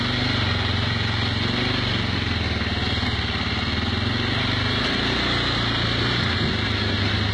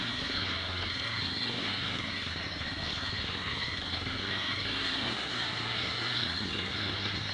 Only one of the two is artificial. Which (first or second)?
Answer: second